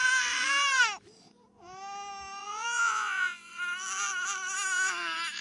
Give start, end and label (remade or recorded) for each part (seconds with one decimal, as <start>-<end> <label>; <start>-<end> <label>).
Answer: 0.0-2.4 recorded; 2.4-3.5 remade; 3.5-5.4 recorded